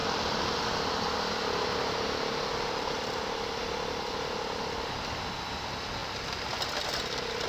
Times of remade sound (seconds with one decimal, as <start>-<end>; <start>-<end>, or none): 0.0-3.2